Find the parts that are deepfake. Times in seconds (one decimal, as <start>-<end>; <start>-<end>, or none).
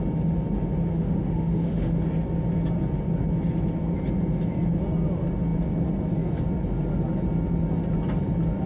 0.9-2.0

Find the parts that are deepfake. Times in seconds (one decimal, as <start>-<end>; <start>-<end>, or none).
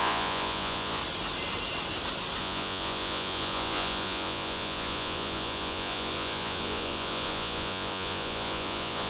0.0-1.0; 2.4-9.1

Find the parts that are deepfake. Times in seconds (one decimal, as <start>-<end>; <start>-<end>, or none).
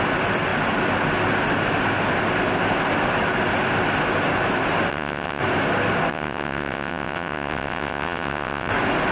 4.9-5.4; 6.1-8.7